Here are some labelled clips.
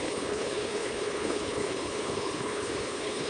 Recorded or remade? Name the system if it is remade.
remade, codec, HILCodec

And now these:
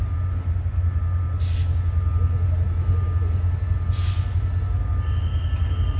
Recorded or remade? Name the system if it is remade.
recorded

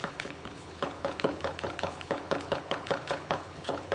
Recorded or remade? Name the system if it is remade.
remade, codec, HILCodec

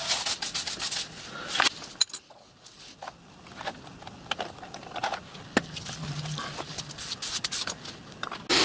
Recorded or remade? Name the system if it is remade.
recorded